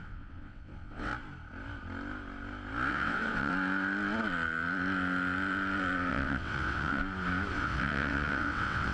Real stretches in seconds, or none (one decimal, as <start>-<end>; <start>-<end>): 1.1-2.9; 3.5-6.1; 7.0-7.5